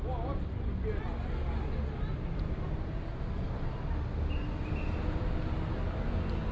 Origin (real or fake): real